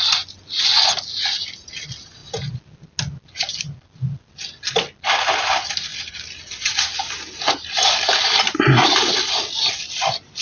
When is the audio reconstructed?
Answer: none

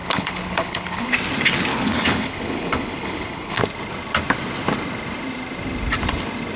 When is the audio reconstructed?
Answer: 0.0-1.1 (codec, HILCodec); 1.7-3.6

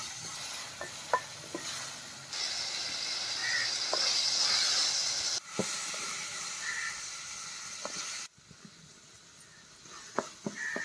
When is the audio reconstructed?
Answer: none

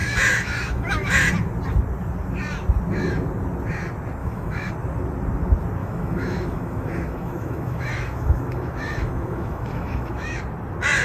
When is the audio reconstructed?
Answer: 0.0-1.3 (autoencoder, DAC-VAE); 4.2-4.7; 5.8-10.4